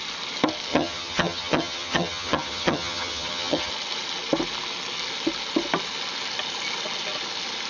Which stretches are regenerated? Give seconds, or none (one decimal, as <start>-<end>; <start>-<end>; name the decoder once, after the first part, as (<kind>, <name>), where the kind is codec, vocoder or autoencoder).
0.7-3.7 (vocoder, HiFi-GAN)